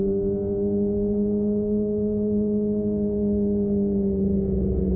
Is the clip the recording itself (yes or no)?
yes